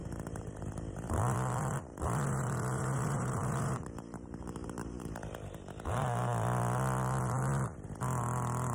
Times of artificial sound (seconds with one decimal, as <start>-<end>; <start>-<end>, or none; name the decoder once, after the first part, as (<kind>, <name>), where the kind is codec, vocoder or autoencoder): 0.0-0.5 (vocoder, BigVGAN v2); 1.9-5.1